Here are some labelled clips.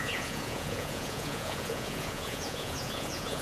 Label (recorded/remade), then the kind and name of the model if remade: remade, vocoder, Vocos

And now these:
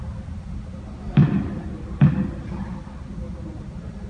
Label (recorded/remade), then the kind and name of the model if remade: recorded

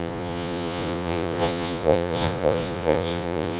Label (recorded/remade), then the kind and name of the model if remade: remade, vocoder, Vocos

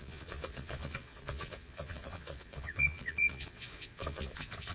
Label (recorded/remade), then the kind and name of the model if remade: remade, vocoder, Vocos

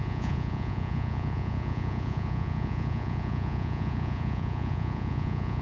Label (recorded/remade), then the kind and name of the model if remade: remade, vocoder, Vocos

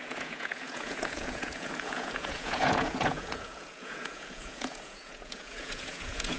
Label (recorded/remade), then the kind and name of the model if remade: remade, vocoder, Vocos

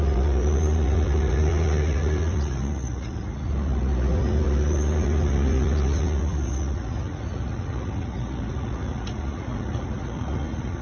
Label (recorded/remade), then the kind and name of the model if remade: remade, vocoder, Vocos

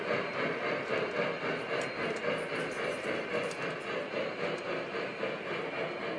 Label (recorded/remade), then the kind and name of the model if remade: recorded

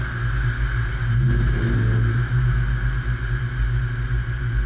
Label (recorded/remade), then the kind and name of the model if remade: recorded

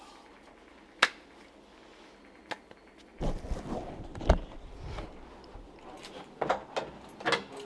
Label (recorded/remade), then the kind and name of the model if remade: recorded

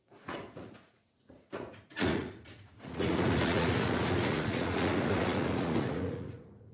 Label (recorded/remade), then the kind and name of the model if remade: remade, vocoder, Vocos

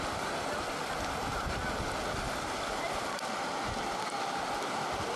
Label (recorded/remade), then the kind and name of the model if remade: recorded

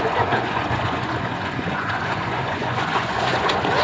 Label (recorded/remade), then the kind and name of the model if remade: remade, vocoder, Vocos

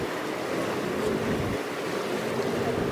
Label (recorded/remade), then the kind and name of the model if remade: recorded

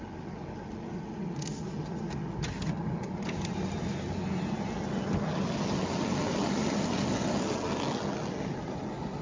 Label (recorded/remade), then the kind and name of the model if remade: recorded